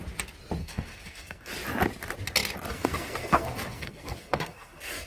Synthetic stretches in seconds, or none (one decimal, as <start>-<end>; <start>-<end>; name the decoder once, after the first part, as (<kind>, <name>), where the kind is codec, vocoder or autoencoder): 0.6-1.5 (codec, SNAC); 2.7-5.1